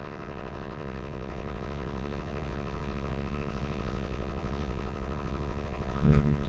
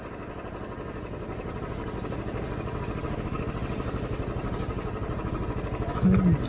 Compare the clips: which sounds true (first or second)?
second